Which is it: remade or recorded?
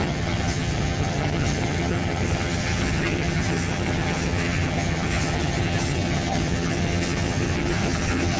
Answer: remade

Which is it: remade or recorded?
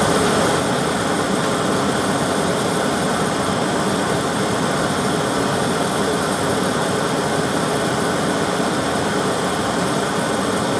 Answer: recorded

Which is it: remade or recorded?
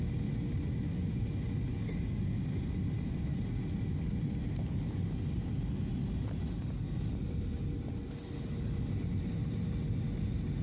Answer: recorded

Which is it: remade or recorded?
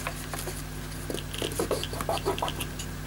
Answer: recorded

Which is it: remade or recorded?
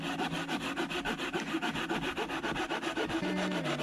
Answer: recorded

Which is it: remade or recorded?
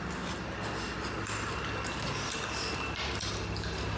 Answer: recorded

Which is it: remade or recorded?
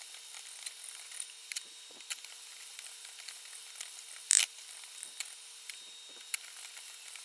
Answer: recorded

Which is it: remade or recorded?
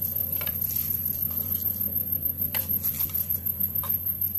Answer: recorded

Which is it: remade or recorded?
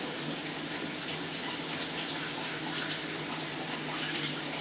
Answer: recorded